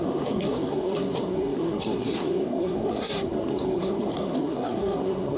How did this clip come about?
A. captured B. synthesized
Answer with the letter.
B